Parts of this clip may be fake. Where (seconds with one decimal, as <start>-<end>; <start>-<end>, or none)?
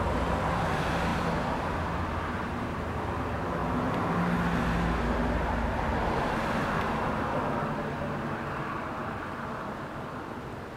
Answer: none